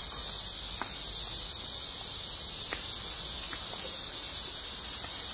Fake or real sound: real